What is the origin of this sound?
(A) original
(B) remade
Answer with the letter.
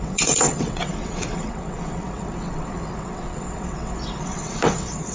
B